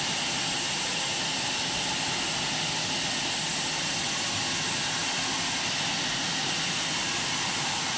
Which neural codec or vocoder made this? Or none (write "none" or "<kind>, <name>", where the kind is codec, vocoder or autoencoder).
none